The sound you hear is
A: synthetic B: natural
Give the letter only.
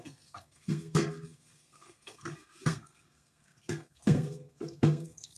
A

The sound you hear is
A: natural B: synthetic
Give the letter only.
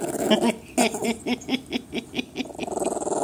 A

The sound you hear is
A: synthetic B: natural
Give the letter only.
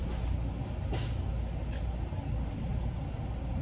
B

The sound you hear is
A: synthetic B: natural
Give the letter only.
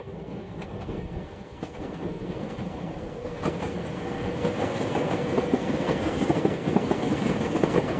A